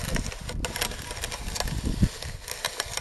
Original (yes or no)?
yes